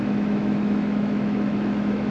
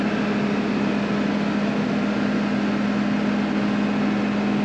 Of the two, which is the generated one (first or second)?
first